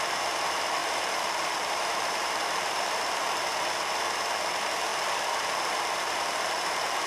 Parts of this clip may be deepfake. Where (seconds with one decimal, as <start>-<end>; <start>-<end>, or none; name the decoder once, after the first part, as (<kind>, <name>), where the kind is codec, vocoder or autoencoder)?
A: 0.8-3.6 (vocoder, BigVGAN v2); 4.9-7.1